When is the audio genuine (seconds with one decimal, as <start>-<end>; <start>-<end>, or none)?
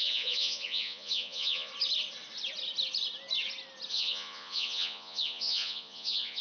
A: 1.7-3.9